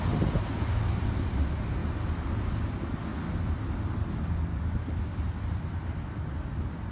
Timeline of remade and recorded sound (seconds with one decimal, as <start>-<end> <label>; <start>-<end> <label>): 0.0-6.9 recorded